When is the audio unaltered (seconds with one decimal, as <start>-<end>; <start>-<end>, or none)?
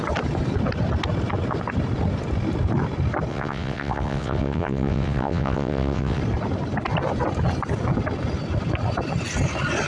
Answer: 0.0-3.3; 6.2-9.9